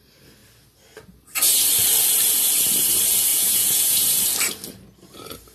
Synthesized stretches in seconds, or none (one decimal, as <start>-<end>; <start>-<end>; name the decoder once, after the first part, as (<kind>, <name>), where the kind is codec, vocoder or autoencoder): 3.3-4.2 (vocoder, Vocos)